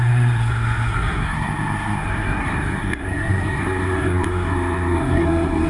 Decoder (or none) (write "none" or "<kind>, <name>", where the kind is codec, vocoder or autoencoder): codec, SNAC